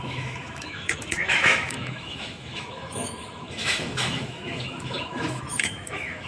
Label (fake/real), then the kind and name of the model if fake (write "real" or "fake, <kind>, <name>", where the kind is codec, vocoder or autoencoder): fake, autoencoder, DAC-VAE